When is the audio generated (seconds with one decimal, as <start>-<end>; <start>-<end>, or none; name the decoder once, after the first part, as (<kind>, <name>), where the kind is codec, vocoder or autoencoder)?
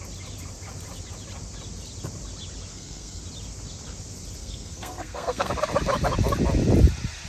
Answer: 2.7-3.2 (codec, SNAC); 4.4-5.5